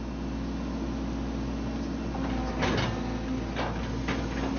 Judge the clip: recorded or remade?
recorded